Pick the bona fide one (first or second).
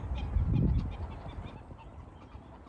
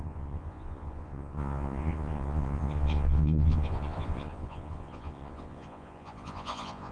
first